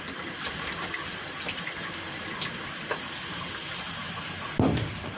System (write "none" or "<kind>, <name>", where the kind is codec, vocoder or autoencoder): none